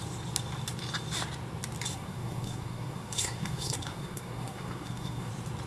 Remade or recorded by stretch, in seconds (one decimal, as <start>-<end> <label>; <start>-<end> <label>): 0.0-1.9 recorded; 1.9-5.3 remade; 5.3-5.7 recorded